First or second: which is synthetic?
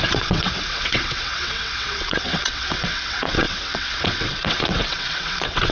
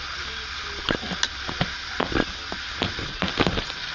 first